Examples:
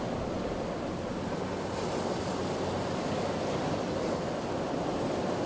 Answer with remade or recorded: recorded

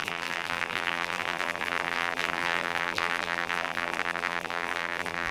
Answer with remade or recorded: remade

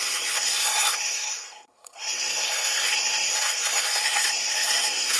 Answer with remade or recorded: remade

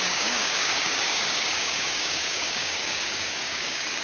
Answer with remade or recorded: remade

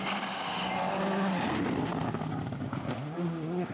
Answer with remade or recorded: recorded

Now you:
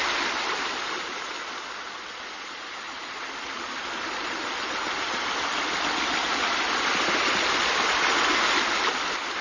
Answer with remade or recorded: recorded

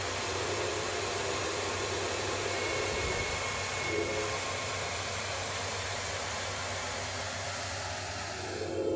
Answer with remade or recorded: recorded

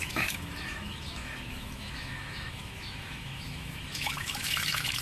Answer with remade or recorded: remade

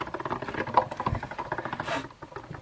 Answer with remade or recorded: recorded